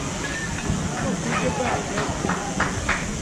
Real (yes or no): yes